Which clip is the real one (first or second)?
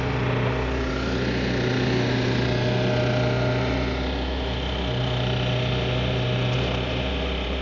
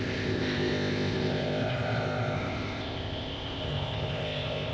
first